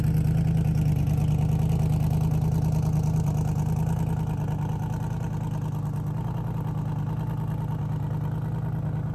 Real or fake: real